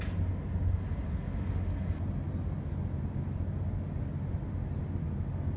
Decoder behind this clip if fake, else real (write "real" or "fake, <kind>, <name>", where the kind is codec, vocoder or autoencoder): real